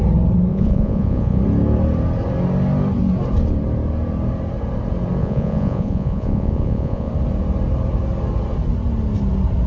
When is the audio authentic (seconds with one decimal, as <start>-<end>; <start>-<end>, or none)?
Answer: 0.0-0.5; 1.4-5.2; 7.1-9.7